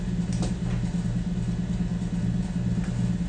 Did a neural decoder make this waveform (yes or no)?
no